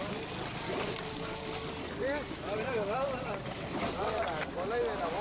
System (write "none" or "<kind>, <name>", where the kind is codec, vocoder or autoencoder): none